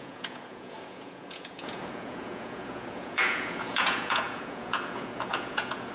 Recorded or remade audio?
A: remade